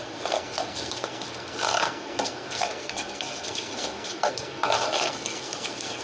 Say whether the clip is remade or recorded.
remade